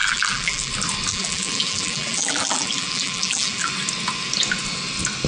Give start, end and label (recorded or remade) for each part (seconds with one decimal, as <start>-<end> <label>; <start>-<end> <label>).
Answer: 0.0-0.7 remade; 0.7-1.1 recorded; 1.1-3.7 remade; 3.7-5.3 recorded